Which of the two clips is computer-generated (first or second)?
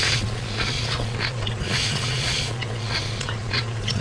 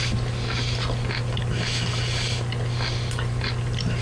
first